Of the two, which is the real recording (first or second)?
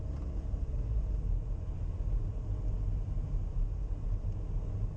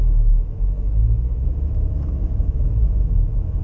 first